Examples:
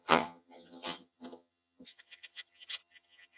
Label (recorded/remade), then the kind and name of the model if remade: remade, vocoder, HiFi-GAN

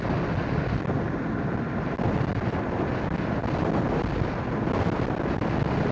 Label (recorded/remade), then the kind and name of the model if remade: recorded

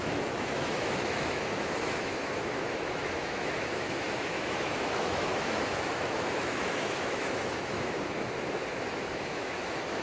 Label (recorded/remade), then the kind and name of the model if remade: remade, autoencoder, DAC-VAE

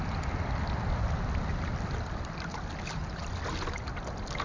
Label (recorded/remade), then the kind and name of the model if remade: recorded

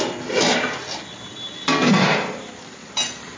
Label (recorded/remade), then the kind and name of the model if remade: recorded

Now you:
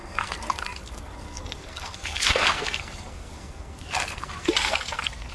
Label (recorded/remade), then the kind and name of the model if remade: remade, codec, SNAC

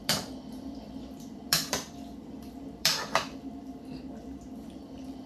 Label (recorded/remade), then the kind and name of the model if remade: remade, vocoder, BigVGAN v2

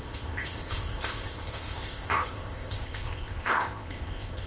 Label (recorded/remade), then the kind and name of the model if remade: remade, codec, ZipCodec